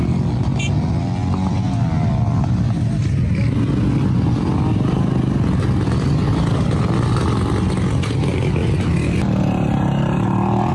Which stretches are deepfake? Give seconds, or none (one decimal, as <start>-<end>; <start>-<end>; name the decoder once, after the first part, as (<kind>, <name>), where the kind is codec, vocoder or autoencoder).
none